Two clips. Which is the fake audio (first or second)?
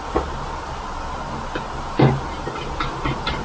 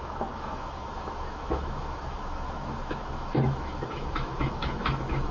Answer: second